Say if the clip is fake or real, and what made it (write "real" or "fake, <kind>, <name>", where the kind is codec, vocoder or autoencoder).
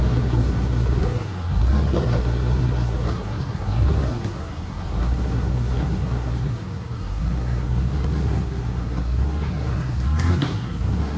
fake, codec, SNAC